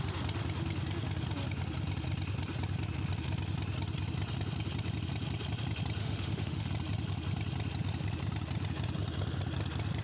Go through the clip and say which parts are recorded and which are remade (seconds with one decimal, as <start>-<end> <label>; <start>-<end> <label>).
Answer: 0.0-6.0 recorded; 6.0-6.7 remade; 6.7-10.0 recorded